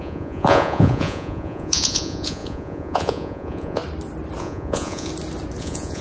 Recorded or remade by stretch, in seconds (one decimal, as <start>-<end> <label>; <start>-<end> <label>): 0.0-3.8 remade; 3.8-4.4 recorded; 4.4-5.1 remade; 5.1-5.6 recorded; 5.6-6.0 remade